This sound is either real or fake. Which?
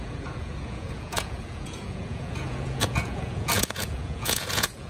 fake